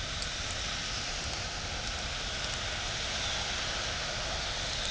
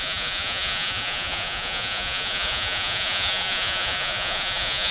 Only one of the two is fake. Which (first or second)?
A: second